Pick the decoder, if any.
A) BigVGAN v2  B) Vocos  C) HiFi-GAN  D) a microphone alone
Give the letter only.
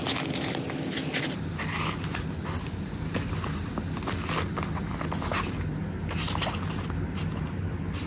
D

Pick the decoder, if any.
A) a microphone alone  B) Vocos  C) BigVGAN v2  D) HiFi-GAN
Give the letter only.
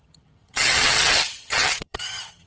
D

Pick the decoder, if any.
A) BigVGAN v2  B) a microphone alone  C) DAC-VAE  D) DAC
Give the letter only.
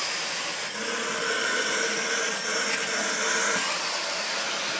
B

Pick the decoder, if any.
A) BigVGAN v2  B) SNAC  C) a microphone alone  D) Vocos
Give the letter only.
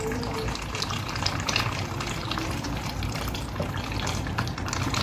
C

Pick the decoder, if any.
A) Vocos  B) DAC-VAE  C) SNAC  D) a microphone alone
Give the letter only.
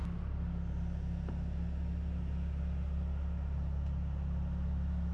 D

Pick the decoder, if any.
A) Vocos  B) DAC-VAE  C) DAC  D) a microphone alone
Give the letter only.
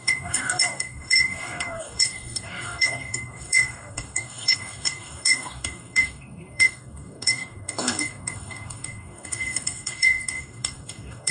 C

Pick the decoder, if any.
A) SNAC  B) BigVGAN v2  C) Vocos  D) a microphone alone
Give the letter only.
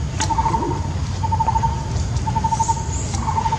D